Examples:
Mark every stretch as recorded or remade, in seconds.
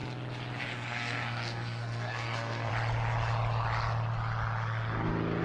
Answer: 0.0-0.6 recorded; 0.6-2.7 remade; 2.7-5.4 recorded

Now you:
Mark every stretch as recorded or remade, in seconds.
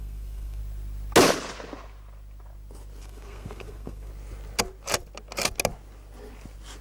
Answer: 0.0-0.6 remade; 0.6-3.0 recorded; 3.0-4.1 remade; 4.1-6.8 recorded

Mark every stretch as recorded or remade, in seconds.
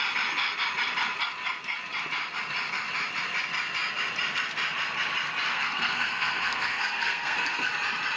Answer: 0.0-5.5 recorded; 5.5-7.7 remade; 7.7-8.2 recorded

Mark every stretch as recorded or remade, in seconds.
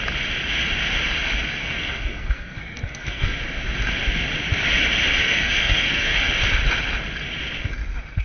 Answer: 0.0-1.6 recorded; 1.6-3.4 remade; 3.4-5.2 recorded; 5.2-6.3 remade; 6.3-8.2 recorded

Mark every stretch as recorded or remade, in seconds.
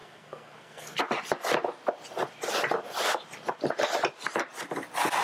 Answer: 0.0-1.0 remade; 1.0-5.2 recorded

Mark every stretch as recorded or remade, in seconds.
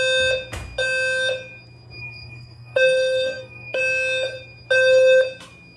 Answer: 0.0-2.0 recorded; 2.0-3.8 remade; 3.8-5.8 recorded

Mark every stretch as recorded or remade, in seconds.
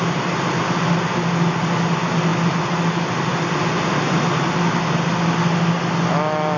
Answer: 0.0-6.6 recorded